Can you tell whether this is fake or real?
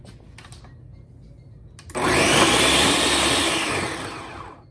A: real